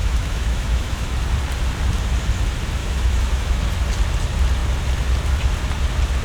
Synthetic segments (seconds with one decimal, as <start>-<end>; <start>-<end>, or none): 0.0-1.1; 2.8-3.6

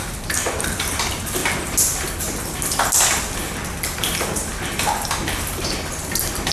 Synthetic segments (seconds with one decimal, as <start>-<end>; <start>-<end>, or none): none

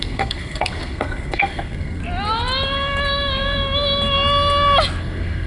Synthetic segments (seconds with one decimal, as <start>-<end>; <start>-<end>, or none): 0.0-2.0; 5.0-5.5

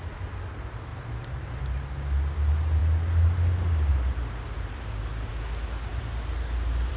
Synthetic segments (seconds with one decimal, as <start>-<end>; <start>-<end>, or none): 5.9-7.0

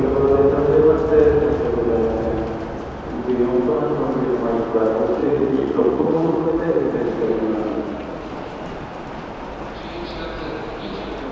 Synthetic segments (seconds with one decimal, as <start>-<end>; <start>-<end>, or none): 5.2-6.9; 7.7-8.3

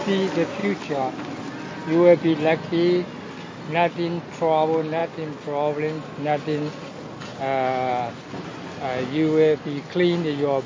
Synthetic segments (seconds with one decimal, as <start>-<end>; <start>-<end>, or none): none